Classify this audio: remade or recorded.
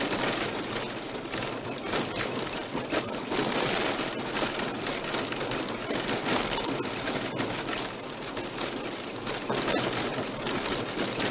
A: recorded